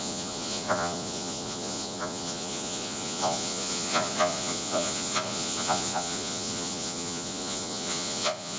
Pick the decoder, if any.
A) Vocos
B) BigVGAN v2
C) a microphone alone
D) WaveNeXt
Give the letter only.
A